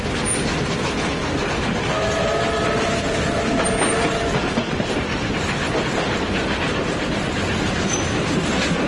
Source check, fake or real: real